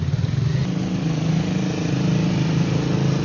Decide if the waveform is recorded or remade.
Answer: recorded